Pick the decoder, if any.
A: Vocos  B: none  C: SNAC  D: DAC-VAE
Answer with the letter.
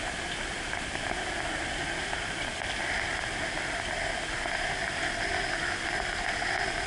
B